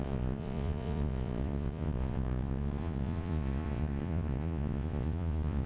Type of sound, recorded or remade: remade